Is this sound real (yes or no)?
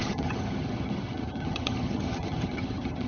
no